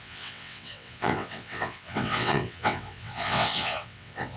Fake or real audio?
fake